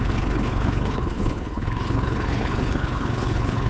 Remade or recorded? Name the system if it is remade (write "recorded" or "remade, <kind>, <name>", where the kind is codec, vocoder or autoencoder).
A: remade, codec, HILCodec